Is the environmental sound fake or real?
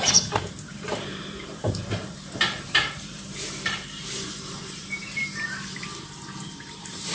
fake